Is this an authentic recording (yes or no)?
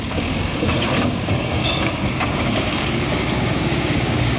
no